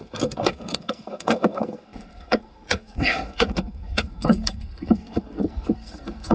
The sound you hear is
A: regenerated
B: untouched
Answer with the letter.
A